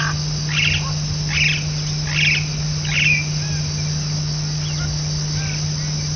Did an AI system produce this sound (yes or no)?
no